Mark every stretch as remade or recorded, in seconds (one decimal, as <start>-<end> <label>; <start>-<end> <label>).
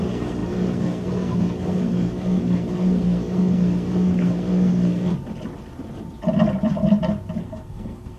0.0-5.1 remade; 5.1-7.4 recorded; 7.4-8.2 remade